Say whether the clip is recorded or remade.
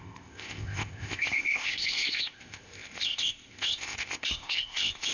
remade